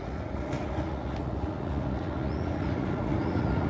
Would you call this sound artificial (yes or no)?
yes